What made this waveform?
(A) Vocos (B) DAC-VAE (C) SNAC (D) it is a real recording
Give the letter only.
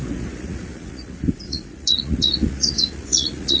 A